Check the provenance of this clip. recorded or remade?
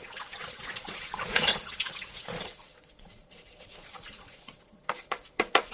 remade